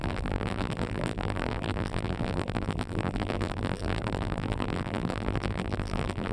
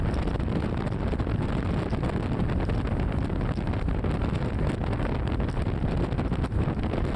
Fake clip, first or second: first